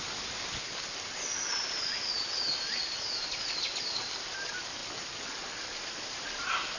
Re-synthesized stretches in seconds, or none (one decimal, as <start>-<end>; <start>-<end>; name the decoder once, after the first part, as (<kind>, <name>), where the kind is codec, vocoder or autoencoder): none